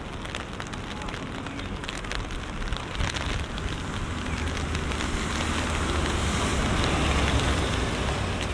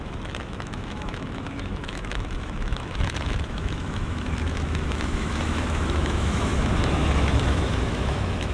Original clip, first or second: first